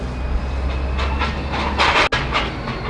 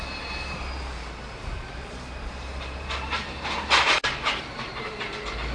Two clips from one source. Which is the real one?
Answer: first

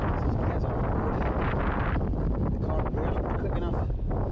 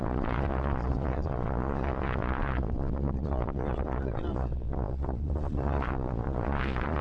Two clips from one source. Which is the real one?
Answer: first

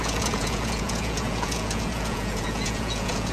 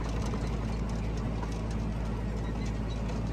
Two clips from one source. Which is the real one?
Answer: second